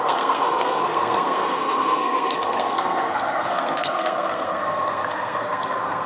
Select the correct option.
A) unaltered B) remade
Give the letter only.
B